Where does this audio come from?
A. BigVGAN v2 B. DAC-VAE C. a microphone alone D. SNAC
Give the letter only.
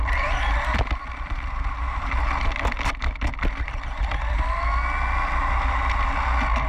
C